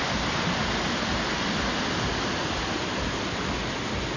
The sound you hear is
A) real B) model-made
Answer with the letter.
A